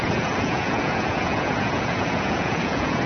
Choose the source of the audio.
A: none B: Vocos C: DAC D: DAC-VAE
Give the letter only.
B